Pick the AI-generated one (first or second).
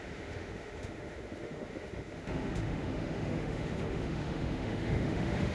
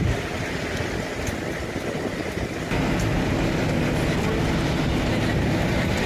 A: first